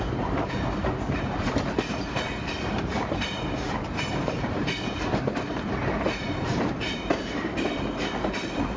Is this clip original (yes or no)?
no